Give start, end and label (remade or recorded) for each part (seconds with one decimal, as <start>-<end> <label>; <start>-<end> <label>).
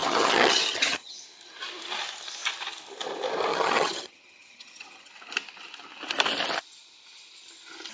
0.0-1.2 remade; 1.2-3.5 recorded; 3.5-5.1 remade; 5.1-7.9 recorded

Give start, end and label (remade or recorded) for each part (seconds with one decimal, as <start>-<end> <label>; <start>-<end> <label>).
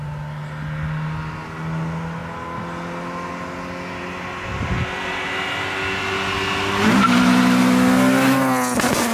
0.0-9.1 recorded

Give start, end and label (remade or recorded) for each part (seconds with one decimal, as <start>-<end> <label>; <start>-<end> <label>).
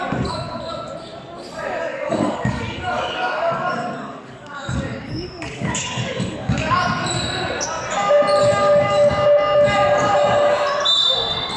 0.0-1.9 recorded; 1.9-6.8 remade; 6.8-8.4 recorded; 8.4-9.1 remade; 9.1-11.6 recorded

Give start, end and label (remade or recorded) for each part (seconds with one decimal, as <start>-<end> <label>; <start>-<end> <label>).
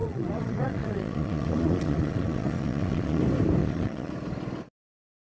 0.0-3.2 remade; 3.2-3.6 recorded; 3.6-4.1 remade; 4.1-5.4 recorded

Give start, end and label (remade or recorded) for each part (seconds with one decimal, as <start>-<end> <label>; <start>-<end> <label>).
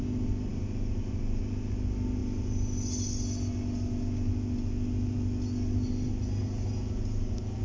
0.0-7.6 recorded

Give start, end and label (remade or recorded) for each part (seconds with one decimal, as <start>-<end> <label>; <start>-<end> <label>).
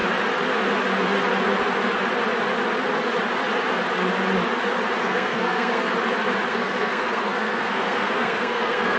0.0-5.0 recorded; 5.0-5.9 remade; 5.9-6.5 recorded; 6.5-9.0 remade